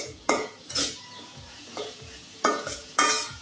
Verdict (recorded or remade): remade